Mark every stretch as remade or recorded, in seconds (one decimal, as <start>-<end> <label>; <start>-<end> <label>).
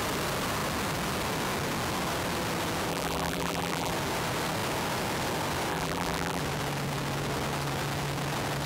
0.0-2.9 recorded; 2.9-3.9 remade; 3.9-5.7 recorded; 5.7-6.4 remade; 6.4-8.7 recorded